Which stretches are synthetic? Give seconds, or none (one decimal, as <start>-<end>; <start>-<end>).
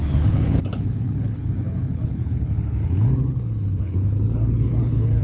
0.0-5.2